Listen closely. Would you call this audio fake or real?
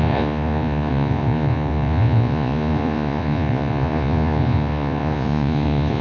fake